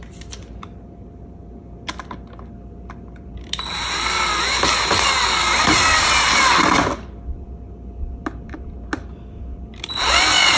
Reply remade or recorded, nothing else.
recorded